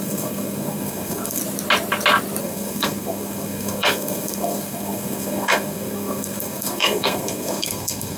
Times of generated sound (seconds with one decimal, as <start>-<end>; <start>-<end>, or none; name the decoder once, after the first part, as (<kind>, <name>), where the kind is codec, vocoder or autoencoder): 0.0-1.4 (codec, SNAC); 2.4-8.2